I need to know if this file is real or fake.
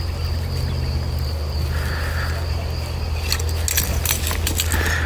real